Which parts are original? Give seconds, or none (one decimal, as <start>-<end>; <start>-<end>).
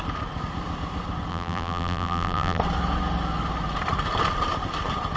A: 0.0-1.3; 2.6-5.2